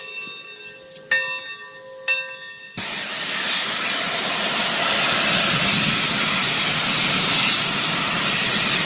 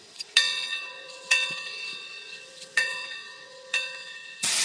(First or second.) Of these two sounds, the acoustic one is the first